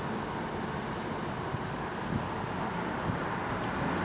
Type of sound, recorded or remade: recorded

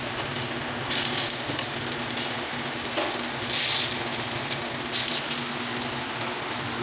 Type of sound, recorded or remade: recorded